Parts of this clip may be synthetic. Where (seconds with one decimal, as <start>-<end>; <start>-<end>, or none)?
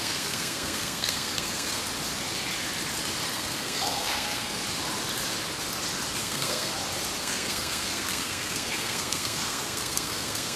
0.0-1.8; 3.3-4.6; 6.2-6.7; 7.2-10.6